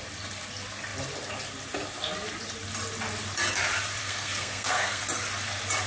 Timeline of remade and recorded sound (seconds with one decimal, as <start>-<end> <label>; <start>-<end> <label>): 0.0-4.0 recorded; 4.0-5.0 remade; 5.0-5.9 recorded